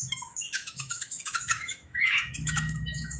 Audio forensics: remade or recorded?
remade